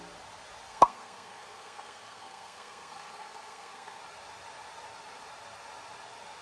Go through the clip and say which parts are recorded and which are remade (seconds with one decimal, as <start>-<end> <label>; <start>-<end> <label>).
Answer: 0.0-0.7 recorded; 0.7-4.0 remade; 4.0-6.4 recorded